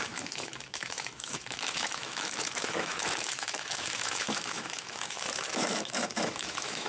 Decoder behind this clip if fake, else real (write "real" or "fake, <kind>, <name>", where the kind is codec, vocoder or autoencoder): fake, autoencoder, DAC-VAE